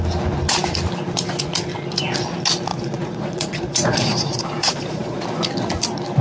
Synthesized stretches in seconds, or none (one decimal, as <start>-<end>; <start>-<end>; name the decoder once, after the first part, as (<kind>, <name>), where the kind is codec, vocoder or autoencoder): 2.7-5.2 (vocoder, Vocos)